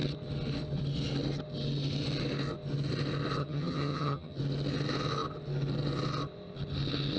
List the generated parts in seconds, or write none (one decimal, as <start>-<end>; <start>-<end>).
3.4-4.4